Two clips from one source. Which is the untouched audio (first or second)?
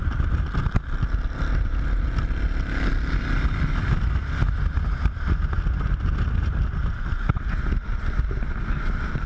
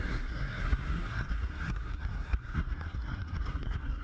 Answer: first